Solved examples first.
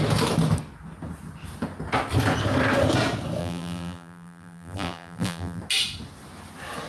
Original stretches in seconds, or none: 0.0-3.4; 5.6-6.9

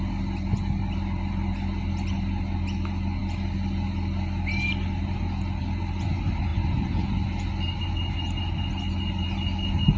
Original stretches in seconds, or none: 0.0-10.0

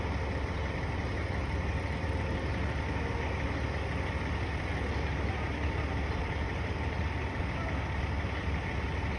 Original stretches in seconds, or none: 0.0-6.2; 7.4-9.2